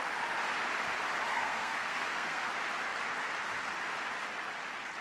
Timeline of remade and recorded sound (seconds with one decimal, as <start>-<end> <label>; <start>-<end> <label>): 0.0-1.3 recorded; 1.3-2.5 remade; 2.5-5.0 recorded